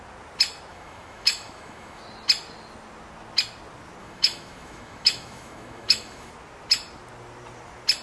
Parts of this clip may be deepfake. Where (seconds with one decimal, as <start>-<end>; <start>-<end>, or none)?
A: 0.7-2.0; 4.0-6.3